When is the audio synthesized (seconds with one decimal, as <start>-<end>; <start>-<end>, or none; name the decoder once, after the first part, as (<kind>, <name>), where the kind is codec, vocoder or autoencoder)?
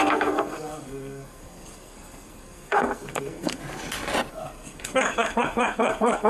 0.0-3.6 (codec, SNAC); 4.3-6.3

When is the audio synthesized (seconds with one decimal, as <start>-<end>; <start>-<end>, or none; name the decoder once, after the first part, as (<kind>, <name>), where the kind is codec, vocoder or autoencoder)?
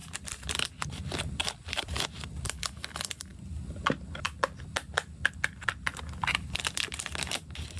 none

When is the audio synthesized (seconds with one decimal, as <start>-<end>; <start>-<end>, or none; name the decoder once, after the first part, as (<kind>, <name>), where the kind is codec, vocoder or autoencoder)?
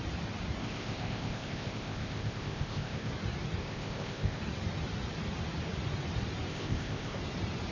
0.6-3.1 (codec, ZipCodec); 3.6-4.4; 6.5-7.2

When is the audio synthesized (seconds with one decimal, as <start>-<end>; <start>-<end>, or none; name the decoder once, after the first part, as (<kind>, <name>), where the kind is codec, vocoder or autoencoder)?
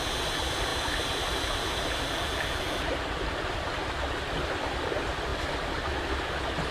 none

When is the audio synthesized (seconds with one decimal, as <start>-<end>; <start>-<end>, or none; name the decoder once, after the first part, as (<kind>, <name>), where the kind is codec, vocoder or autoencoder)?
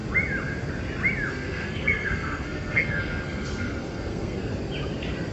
1.3-4.5 (codec, SNAC)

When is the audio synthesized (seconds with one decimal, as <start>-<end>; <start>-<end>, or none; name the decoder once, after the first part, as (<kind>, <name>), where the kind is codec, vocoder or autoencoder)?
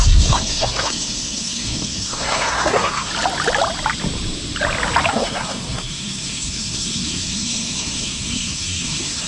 0.0-3.1 (codec, SNAC); 5.1-9.3